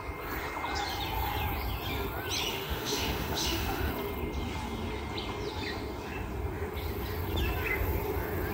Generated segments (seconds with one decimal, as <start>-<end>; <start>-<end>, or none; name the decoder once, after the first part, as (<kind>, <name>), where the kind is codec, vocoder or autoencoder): 2.5-3.9 (autoencoder, DAC-VAE)